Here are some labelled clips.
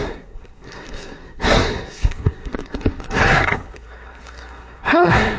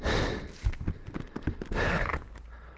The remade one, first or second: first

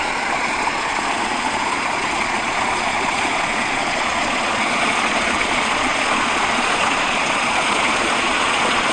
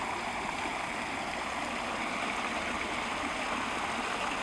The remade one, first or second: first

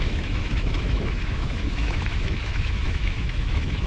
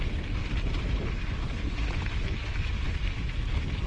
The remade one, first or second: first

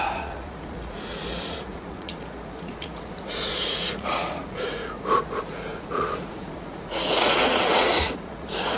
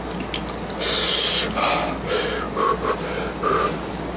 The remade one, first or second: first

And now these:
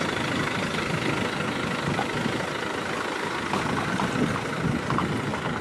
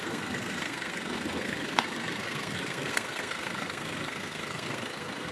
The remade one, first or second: second